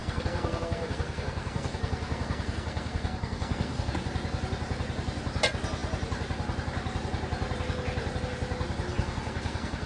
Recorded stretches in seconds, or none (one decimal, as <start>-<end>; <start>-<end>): 3.9-8.9

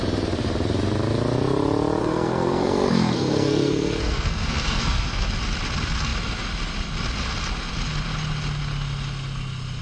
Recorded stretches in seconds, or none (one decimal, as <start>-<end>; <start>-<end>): 0.0-2.0; 5.3-9.8

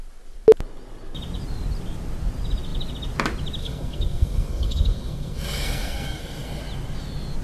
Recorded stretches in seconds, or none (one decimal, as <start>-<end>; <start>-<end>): 0.0-3.6; 6.6-7.4

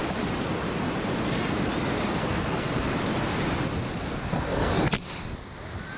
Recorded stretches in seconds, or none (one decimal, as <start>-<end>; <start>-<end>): 0.0-2.2; 2.8-4.1; 4.8-6.0